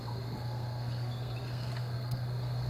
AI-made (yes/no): yes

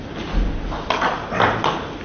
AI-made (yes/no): no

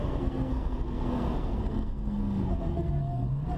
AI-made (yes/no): yes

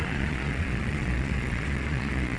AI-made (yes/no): yes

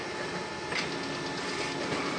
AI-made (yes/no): no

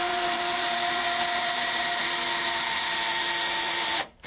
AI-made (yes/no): yes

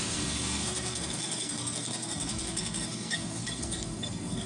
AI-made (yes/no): yes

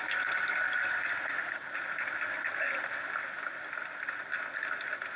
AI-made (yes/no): no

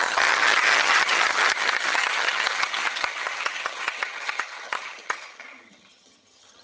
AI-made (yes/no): yes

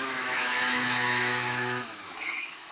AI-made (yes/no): yes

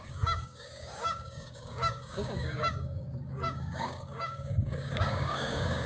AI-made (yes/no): yes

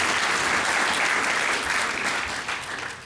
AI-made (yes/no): no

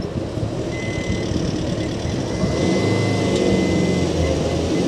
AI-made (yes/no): no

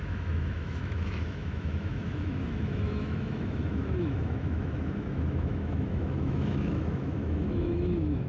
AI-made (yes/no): yes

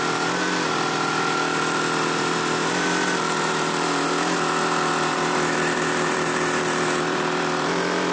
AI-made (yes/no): yes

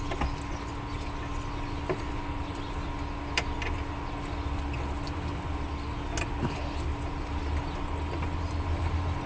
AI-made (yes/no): no